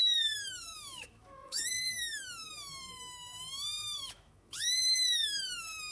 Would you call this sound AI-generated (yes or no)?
yes